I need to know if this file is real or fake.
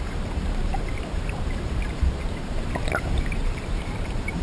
fake